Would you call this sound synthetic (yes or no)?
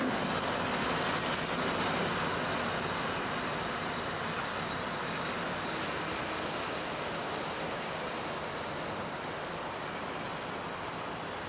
no